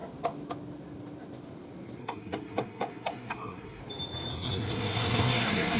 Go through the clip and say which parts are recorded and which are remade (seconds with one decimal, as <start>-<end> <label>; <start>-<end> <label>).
0.0-2.0 recorded; 2.0-3.8 remade; 3.8-4.3 recorded; 4.3-5.8 remade